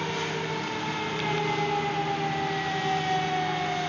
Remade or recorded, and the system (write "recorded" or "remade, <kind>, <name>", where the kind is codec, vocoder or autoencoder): recorded